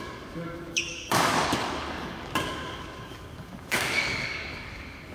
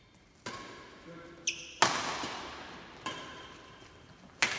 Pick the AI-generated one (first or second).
first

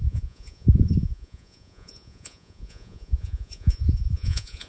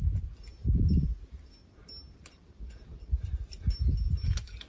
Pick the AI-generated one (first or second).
first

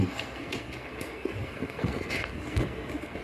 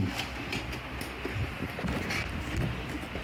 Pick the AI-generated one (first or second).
first